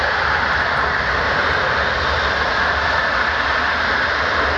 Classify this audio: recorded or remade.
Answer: recorded